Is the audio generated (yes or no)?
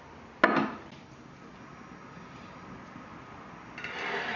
no